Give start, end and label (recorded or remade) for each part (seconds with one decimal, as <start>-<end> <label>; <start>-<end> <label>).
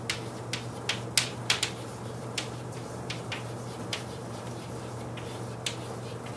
0.0-1.3 recorded; 1.3-4.7 remade; 4.7-6.4 recorded